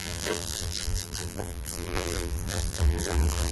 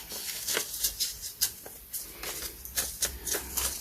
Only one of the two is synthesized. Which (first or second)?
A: first